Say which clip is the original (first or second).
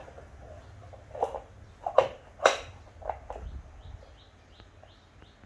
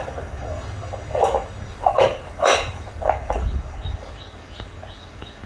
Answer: first